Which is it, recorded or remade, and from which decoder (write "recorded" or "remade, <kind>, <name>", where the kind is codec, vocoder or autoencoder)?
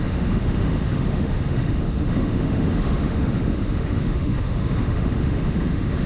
remade, autoencoder, DAC-VAE